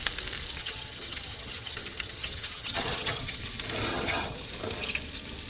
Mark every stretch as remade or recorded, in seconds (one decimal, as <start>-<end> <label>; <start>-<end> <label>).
0.0-0.6 recorded; 0.6-3.4 remade; 3.4-3.9 recorded; 3.9-4.5 remade; 4.5-5.5 recorded